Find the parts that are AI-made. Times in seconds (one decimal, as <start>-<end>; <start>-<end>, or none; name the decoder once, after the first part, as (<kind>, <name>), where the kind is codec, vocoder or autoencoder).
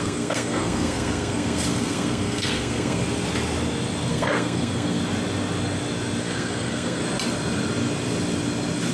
0.0-3.0 (codec, SNAC); 4.1-5.0; 6.2-7.0